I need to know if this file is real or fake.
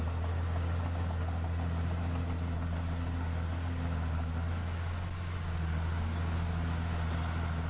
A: real